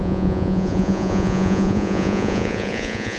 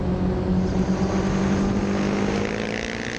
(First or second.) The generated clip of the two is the first